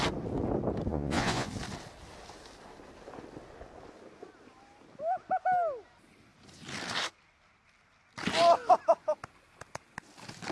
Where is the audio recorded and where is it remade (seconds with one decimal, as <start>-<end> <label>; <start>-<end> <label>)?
0.0-0.9 recorded; 0.9-1.5 remade; 1.5-10.5 recorded